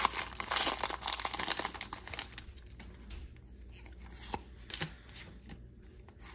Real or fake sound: real